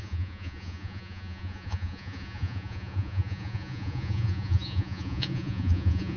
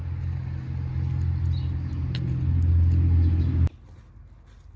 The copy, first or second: first